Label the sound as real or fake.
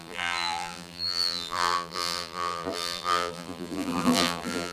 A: fake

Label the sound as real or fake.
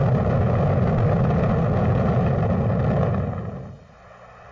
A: real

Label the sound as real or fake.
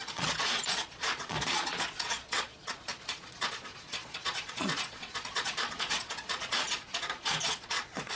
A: fake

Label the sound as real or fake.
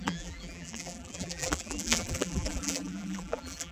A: fake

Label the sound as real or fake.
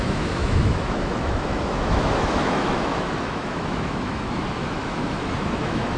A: fake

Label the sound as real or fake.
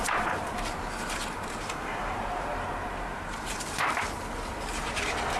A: fake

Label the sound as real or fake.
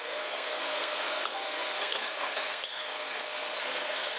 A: fake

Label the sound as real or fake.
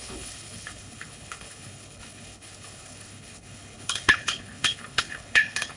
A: fake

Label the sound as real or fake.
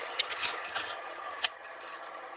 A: fake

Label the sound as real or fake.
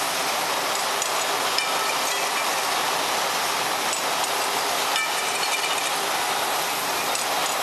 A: real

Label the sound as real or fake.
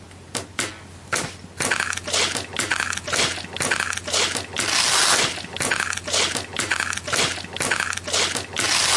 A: real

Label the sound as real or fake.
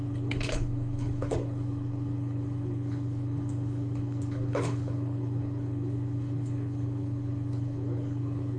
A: fake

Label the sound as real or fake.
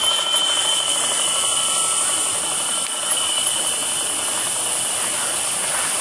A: fake